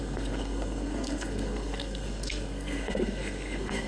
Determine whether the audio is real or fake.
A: fake